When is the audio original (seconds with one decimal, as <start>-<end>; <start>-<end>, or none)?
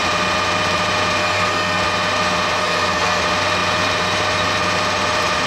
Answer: 0.0-1.2; 1.8-2.6; 3.2-5.5